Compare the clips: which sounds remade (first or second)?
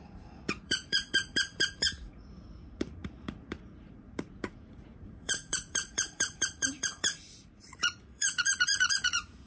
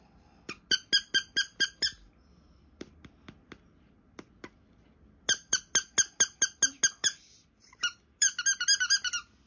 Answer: first